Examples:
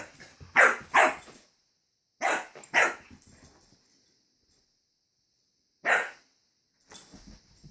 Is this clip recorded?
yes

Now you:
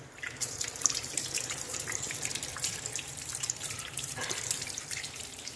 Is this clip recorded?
no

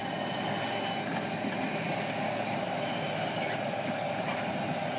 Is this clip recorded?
yes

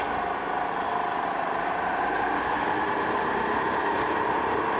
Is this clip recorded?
yes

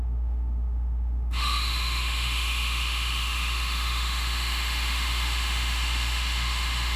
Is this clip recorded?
no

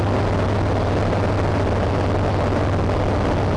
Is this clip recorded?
yes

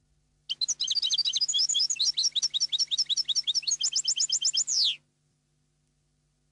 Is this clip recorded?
yes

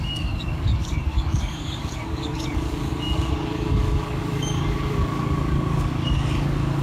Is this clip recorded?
no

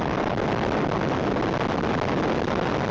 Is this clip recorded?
yes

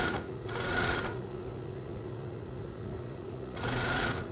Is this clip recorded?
no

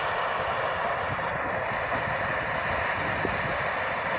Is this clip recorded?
yes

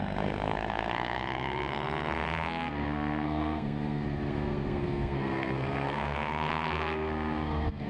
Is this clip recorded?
no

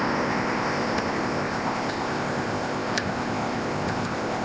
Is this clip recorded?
no